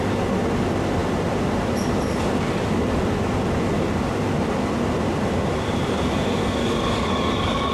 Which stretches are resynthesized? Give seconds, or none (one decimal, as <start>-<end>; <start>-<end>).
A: 6.6-7.7

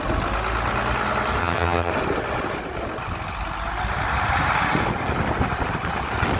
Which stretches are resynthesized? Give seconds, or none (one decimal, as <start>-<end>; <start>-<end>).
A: 1.4-1.9